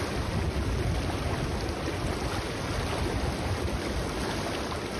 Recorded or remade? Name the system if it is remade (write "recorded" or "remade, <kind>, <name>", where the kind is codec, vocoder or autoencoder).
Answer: recorded